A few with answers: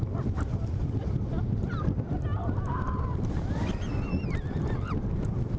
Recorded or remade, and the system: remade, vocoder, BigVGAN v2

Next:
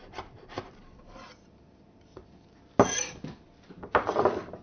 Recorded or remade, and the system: recorded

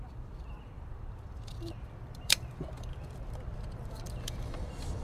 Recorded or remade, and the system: remade, vocoder, BigVGAN v2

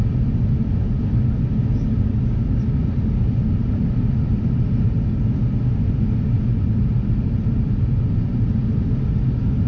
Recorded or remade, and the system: recorded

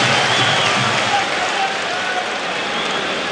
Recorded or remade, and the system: recorded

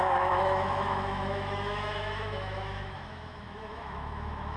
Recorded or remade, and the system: remade, autoencoder, DAC-VAE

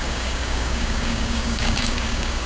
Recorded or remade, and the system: remade, codec, DAC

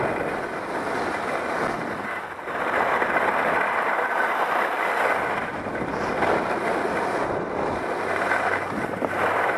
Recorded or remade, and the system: recorded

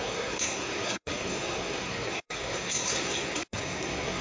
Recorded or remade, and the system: remade, codec, SNAC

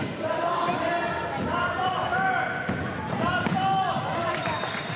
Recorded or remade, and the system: recorded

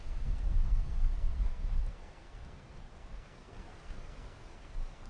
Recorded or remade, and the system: remade, codec, SNAC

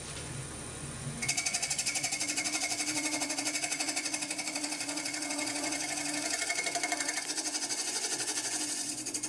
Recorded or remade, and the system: remade, vocoder, Vocos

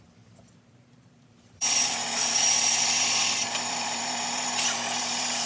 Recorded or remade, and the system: remade, vocoder, BigVGAN v2